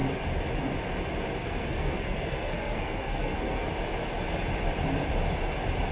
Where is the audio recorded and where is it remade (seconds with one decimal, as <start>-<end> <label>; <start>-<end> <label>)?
0.0-1.4 recorded; 1.4-3.7 remade; 3.7-5.9 recorded